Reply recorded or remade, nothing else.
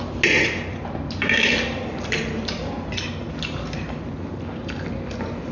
recorded